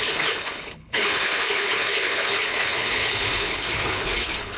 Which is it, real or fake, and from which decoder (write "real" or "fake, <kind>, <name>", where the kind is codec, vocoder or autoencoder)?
fake, codec, HILCodec